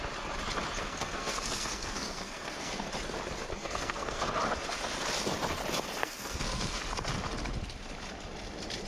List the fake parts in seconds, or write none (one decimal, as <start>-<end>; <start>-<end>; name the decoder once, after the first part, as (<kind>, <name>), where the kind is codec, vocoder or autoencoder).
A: 0.8-2.9 (codec, SNAC); 3.5-4.4; 6.0-6.8